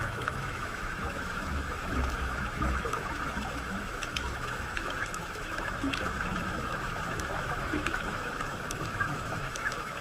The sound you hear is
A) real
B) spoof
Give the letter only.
B